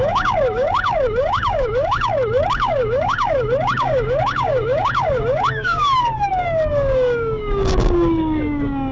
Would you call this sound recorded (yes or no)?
no